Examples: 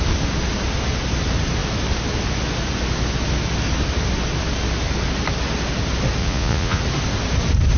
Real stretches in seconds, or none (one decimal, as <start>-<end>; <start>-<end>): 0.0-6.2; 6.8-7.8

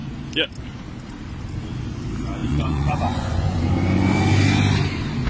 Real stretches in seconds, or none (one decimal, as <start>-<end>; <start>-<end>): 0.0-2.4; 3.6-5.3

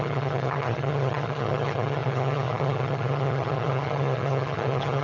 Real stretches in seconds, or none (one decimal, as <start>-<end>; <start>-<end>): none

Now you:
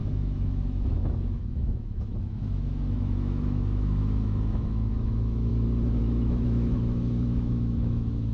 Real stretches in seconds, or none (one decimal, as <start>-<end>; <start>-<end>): 5.5-6.0